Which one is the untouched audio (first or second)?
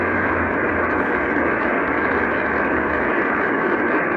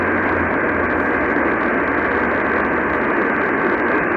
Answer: second